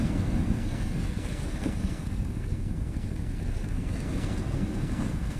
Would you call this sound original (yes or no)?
no